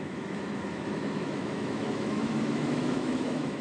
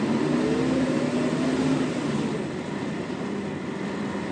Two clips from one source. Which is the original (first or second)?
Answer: second